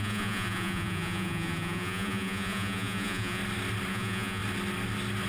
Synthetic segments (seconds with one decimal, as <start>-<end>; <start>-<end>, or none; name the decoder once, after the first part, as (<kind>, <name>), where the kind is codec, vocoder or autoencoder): 0.0-3.4 (vocoder, Vocos); 3.9-4.4